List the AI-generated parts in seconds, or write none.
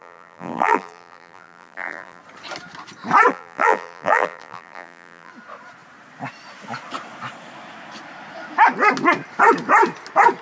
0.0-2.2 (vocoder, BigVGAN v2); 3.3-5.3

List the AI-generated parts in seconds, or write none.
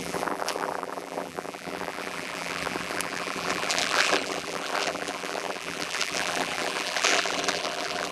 0.0-8.1 (vocoder, BigVGAN v2)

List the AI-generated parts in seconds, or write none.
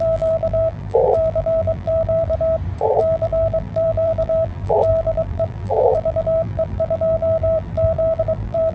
0.0-2.3 (vocoder, BigVGAN v2); 2.8-8.7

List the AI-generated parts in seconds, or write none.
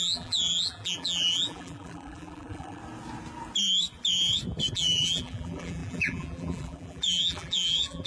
0.0-2.8 (vocoder, BigVGAN v2); 4.7-8.1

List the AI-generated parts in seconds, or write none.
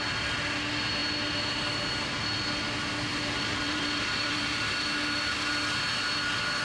3.1-4.7 (vocoder, BigVGAN v2)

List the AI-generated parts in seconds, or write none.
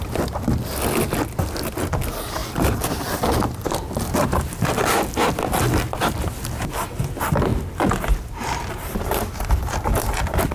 2.4-4.2 (vocoder, BigVGAN v2); 7.5-10.1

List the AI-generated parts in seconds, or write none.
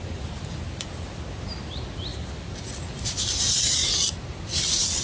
2.1-3.0 (vocoder, BigVGAN v2)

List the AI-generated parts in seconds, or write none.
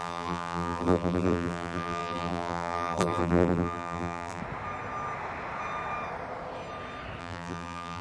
0.0-4.4 (vocoder, BigVGAN v2); 7.2-8.0